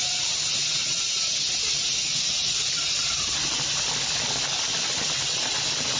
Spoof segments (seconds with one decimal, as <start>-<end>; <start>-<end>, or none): none